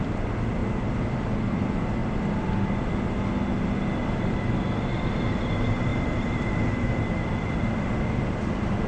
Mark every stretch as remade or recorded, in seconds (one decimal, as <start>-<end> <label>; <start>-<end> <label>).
0.0-2.0 recorded; 2.0-3.0 remade; 3.0-5.9 recorded; 5.9-7.6 remade; 7.6-8.9 recorded